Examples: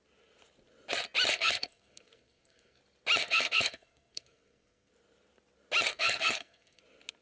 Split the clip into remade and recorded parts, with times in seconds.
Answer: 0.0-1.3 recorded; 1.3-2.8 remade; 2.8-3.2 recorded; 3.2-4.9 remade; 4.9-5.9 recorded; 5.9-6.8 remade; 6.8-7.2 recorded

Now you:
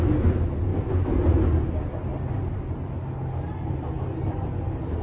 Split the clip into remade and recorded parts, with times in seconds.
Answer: 0.0-5.0 recorded

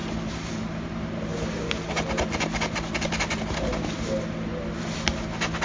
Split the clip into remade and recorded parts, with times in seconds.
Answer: 0.0-5.6 recorded

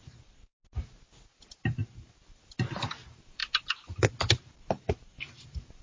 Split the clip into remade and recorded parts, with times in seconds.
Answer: 0.0-0.5 remade; 0.5-1.4 recorded; 1.4-5.8 remade

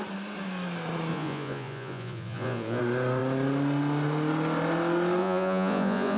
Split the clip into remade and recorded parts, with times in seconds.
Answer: 0.0-1.1 recorded; 1.1-2.8 remade; 2.8-5.2 recorded; 5.2-6.2 remade

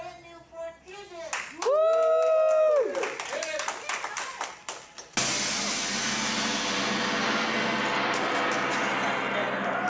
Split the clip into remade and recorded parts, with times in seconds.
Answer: 0.0-9.9 recorded

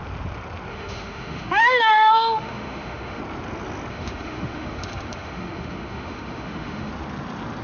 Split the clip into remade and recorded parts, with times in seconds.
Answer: 0.0-0.7 recorded; 0.7-3.2 remade; 3.2-3.9 recorded; 3.9-6.9 remade; 6.9-7.6 recorded

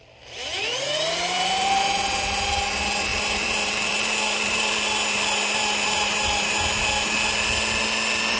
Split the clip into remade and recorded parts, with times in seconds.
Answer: 0.0-0.4 recorded; 0.4-1.8 remade; 1.8-3.1 recorded; 3.1-6.5 remade; 6.5-8.4 recorded